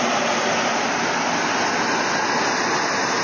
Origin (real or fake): real